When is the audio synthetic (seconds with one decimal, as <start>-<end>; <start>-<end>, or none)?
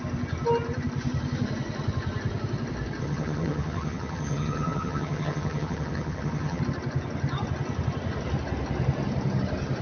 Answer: 3.0-6.6